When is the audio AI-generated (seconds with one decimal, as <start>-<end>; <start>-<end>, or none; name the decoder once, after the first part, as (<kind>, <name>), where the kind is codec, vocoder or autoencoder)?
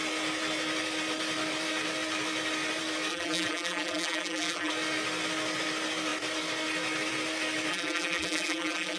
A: 3.1-4.7 (vocoder, BigVGAN v2); 7.7-9.0